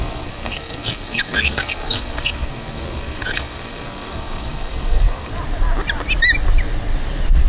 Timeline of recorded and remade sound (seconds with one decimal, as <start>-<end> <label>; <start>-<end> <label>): 0.0-5.3 remade; 5.3-7.5 recorded